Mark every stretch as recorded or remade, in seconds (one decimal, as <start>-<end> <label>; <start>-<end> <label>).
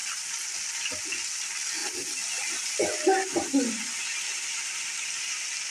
0.0-5.7 recorded